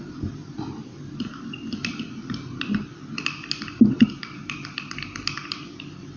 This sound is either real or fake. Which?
real